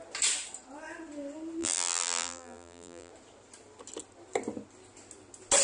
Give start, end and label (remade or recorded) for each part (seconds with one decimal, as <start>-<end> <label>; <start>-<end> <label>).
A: 0.0-1.6 recorded; 1.6-3.1 remade; 3.1-5.6 recorded